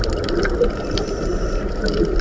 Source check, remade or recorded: recorded